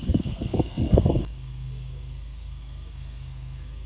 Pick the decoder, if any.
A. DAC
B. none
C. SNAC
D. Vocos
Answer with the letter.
C